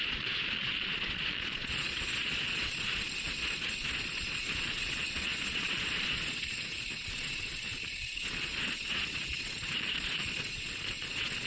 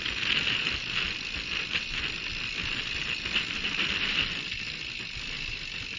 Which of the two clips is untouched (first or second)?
second